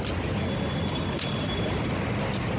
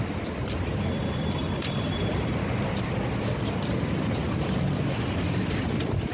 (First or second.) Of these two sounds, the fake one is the second